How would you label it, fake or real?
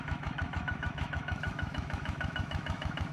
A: fake